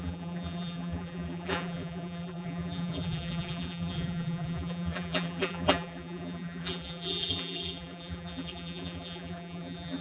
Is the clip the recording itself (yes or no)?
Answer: no